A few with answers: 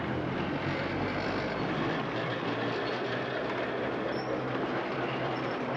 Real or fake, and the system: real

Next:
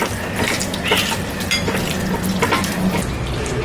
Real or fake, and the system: real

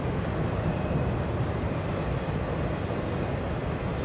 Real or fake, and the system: real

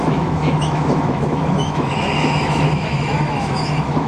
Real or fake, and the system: fake, autoencoder, DAC-VAE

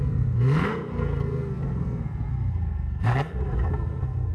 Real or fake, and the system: fake, codec, SNAC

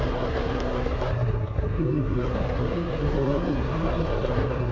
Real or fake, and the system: fake, codec, SNAC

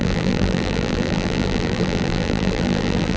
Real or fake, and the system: fake, vocoder, BigVGAN v2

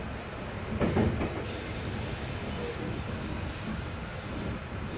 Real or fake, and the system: real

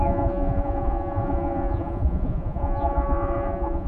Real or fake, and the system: fake, vocoder, Vocos